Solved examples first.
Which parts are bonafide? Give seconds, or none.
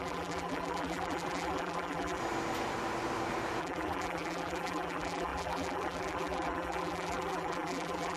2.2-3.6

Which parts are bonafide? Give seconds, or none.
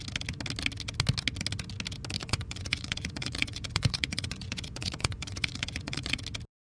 0.0-2.2; 6.2-6.7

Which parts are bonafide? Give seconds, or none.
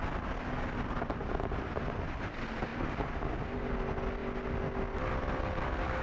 0.0-2.7; 3.7-6.0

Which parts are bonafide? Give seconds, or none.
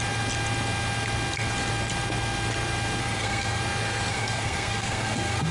0.0-3.0; 3.6-4.1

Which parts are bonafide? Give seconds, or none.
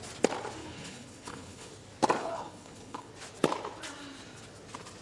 0.0-0.6; 1.7-2.2; 3.1-5.0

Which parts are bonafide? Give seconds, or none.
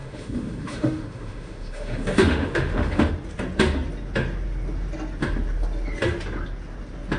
3.1-7.2